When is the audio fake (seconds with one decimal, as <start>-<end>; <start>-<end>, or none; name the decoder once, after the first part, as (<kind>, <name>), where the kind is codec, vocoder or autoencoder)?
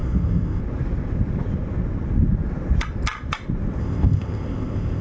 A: 0.0-0.6 (codec, ZipCodec); 3.8-5.0